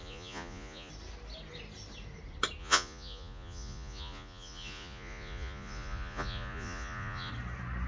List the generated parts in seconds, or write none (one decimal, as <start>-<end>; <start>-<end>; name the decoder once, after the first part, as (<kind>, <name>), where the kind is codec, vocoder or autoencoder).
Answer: 0.0-0.9 (vocoder, Vocos); 2.6-7.3

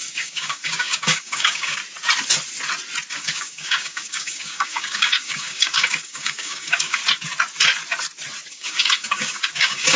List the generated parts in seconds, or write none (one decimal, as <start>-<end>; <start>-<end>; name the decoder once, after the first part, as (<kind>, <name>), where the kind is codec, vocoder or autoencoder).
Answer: 0.0-1.8 (codec, DAC); 3.1-7.0; 8.5-10.0

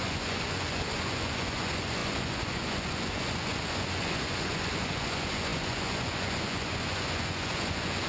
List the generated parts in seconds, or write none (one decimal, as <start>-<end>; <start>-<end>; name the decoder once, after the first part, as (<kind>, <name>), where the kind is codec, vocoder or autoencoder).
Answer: 0.0-8.1 (vocoder, Vocos)

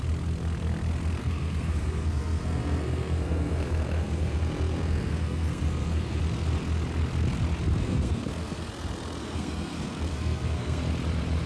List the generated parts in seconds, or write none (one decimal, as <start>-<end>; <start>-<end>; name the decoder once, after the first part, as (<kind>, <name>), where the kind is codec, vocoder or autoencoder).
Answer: 1.2-6.2 (codec, SNAC); 7.8-8.7; 9.2-10.8

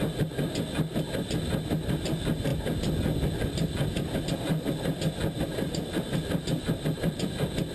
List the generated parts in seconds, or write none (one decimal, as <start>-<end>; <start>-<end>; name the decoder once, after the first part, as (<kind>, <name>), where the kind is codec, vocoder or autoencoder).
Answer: none

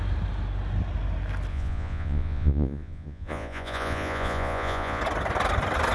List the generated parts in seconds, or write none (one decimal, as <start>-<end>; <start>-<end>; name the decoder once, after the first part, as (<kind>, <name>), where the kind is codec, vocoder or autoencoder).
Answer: 1.5-5.0 (vocoder, Vocos)